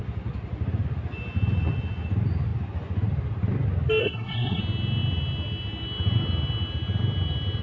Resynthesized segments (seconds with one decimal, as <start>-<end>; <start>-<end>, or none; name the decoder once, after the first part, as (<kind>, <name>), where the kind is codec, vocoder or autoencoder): 4.0-4.6 (codec, SNAC)